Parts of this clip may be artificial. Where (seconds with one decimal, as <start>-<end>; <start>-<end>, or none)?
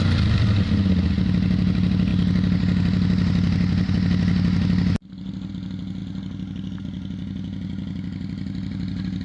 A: none